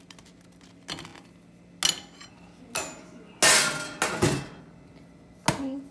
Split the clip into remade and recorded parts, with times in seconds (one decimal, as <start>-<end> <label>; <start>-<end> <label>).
0.0-5.9 recorded